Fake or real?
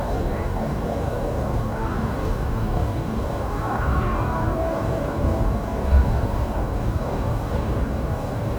fake